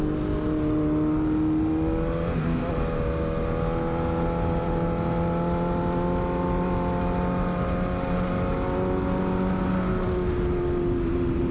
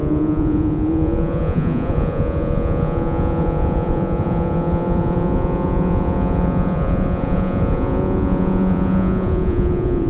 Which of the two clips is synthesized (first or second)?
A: second